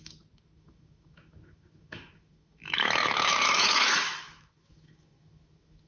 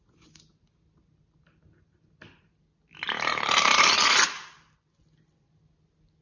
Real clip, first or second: second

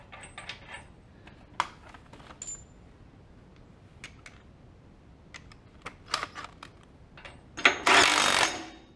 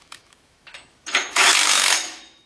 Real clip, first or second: first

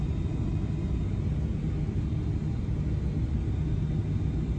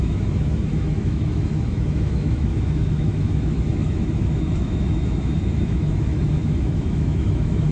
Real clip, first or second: first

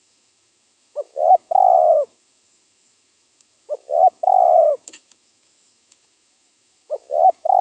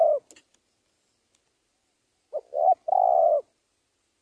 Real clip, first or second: second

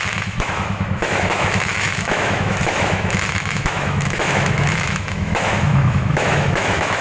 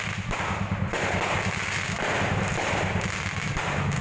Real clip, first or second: second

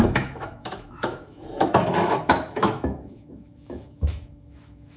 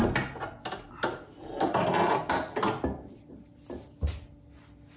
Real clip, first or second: second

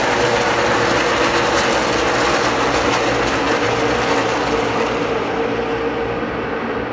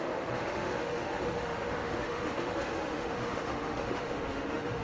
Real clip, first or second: first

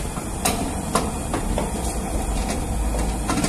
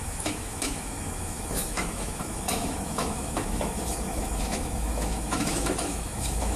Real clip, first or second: first